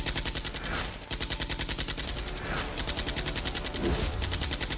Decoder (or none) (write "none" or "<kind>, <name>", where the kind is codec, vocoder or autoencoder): none